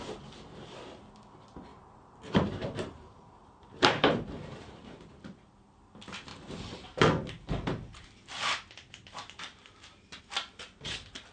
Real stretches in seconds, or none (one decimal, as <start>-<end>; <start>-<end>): 0.0-1.7; 5.0-11.3